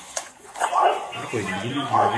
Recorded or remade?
remade